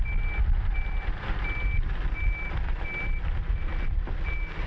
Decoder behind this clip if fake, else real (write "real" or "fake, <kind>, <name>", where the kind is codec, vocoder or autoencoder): real